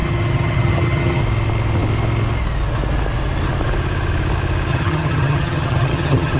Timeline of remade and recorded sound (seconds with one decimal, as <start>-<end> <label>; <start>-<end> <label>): 0.0-1.2 remade; 1.2-4.7 recorded; 4.7-6.4 remade